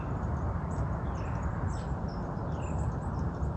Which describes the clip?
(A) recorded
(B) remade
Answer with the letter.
A